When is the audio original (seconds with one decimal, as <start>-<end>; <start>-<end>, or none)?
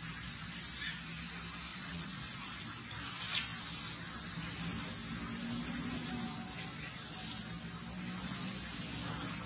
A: 0.0-1.7; 2.6-9.5